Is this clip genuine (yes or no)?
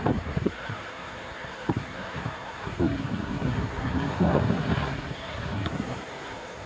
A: no